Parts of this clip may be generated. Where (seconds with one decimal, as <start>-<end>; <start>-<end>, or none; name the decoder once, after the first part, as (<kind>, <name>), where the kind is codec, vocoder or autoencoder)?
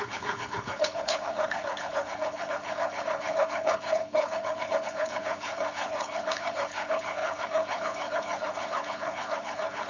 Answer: 0.0-9.9 (codec, HILCodec)